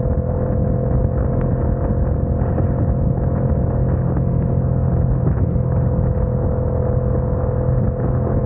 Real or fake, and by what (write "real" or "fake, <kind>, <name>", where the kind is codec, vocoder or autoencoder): real